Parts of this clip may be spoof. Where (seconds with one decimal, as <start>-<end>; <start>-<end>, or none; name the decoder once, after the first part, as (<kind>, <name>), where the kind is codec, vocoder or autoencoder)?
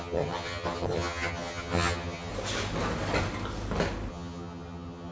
0.0-2.3 (vocoder, HiFi-GAN); 4.1-5.1